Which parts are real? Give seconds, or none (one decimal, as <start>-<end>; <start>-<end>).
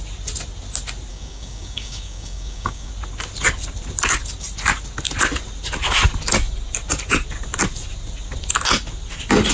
0.0-1.1; 2.9-9.5